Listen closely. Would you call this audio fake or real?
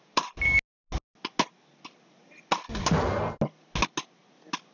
real